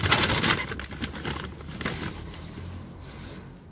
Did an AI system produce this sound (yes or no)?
no